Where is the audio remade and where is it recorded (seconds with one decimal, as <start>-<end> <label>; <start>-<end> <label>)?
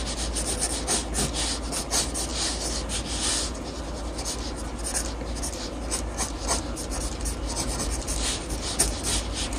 0.0-9.6 recorded